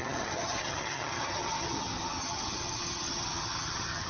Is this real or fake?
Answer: fake